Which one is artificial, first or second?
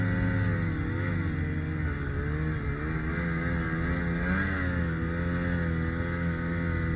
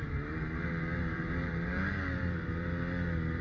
second